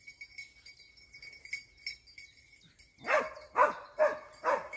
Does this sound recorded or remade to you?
recorded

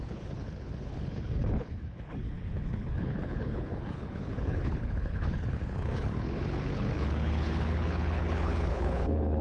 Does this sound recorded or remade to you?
remade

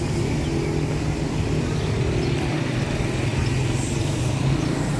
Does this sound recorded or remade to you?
recorded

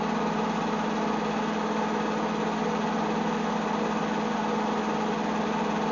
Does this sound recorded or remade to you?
recorded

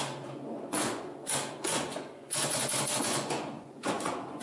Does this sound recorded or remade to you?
remade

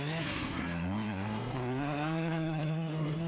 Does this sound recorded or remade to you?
remade